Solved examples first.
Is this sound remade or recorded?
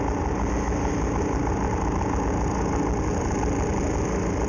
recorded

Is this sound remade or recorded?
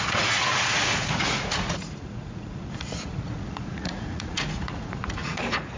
remade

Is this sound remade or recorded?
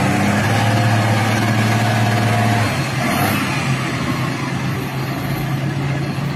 recorded